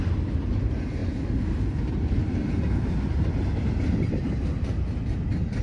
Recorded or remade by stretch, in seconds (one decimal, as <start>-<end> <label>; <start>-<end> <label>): 0.0-5.6 recorded